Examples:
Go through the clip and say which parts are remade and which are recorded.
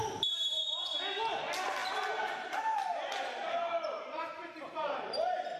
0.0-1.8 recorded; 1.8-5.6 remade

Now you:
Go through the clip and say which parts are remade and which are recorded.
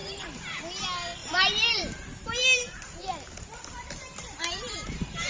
0.0-0.6 remade; 0.6-1.2 recorded; 1.2-3.0 remade; 3.0-4.1 recorded; 4.1-5.3 remade